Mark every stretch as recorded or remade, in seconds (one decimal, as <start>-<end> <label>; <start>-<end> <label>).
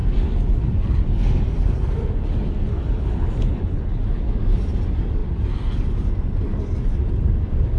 0.0-2.7 recorded; 2.7-4.0 remade; 4.0-7.8 recorded